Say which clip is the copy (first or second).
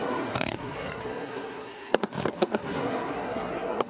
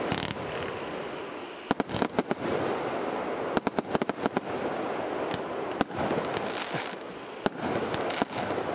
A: first